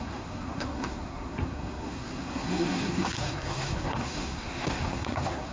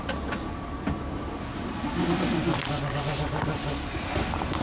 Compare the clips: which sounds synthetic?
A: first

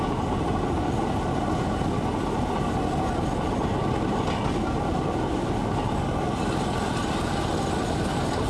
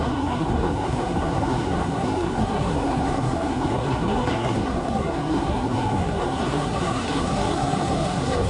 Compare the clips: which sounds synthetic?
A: second